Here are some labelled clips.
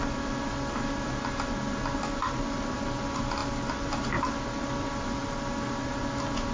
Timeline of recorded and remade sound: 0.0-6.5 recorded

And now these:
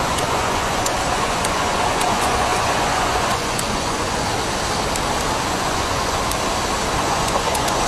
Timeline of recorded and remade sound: 0.0-4.3 remade; 4.3-5.5 recorded; 5.5-6.2 remade; 6.2-7.0 recorded; 7.0-7.9 remade

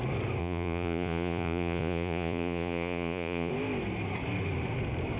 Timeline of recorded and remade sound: 0.0-0.4 recorded; 0.4-3.5 remade; 3.5-5.2 recorded

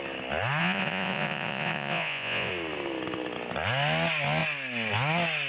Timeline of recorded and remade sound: 0.0-0.6 recorded; 0.6-2.5 remade; 2.5-5.5 recorded

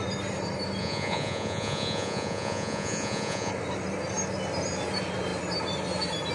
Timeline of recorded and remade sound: 0.0-0.8 recorded; 0.8-3.5 remade; 3.5-6.3 recorded

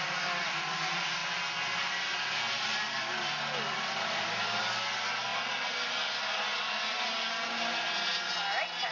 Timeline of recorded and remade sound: 0.0-8.9 recorded

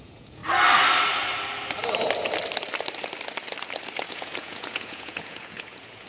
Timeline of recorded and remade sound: 0.0-0.4 remade; 0.4-4.1 recorded; 4.1-6.1 remade